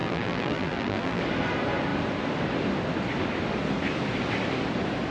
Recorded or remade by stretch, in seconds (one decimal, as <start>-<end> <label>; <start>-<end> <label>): 0.0-1.2 remade; 1.2-5.1 recorded